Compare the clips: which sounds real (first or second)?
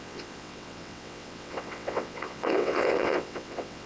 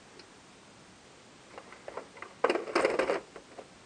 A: second